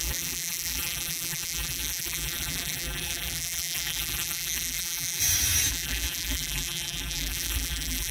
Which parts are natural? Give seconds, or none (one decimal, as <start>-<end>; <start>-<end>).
5.2-5.7